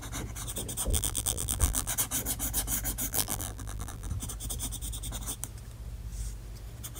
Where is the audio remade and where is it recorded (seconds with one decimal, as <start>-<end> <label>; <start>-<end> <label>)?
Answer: 0.0-0.9 recorded; 0.9-1.9 remade; 1.9-3.1 recorded; 3.1-4.1 remade; 4.1-7.0 recorded